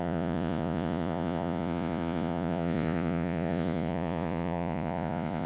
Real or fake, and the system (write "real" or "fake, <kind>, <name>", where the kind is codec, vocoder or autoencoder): fake, vocoder, Vocos